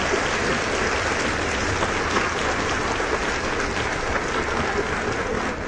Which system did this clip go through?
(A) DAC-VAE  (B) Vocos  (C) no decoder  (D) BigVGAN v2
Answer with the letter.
C